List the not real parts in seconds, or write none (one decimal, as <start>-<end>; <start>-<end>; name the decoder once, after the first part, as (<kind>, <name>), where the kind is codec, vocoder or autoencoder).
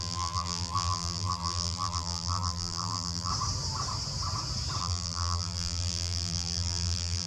0.0-3.3 (vocoder, BigVGAN v2); 4.8-7.3